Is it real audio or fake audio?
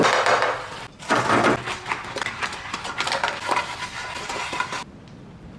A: real